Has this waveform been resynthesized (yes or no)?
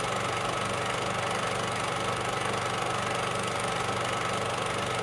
no